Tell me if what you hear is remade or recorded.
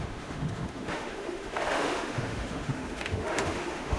remade